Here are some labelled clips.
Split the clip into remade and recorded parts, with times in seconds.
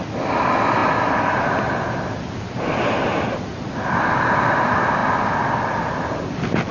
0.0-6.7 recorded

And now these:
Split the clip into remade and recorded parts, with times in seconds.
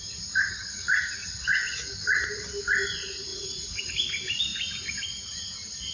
0.0-3.3 recorded; 3.3-3.9 remade; 3.9-5.9 recorded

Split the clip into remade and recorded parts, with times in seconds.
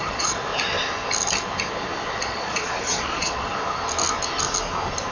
0.0-0.5 remade; 0.5-2.1 recorded; 2.1-3.5 remade; 3.5-5.1 recorded